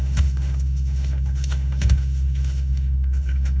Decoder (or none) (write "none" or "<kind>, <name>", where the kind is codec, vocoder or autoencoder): autoencoder, DAC-VAE